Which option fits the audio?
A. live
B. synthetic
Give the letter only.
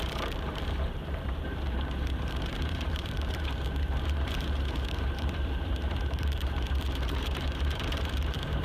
B